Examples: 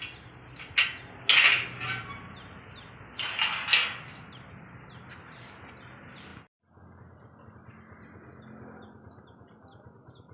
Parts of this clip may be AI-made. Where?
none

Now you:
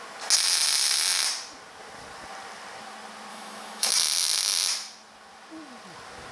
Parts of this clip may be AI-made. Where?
3.3-3.9 (autoencoder, DAC-VAE)